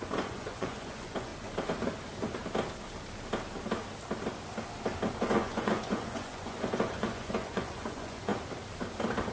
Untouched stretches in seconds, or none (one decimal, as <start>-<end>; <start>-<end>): 1.3-5.2; 8.3-9.3